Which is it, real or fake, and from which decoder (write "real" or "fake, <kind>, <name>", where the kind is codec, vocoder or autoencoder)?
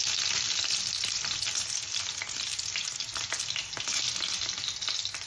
real